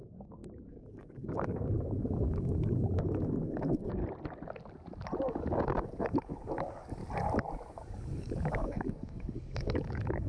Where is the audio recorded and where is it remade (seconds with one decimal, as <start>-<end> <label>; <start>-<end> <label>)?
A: 0.0-4.0 remade; 4.0-5.2 recorded; 5.2-7.0 remade; 7.0-7.7 recorded; 7.7-10.3 remade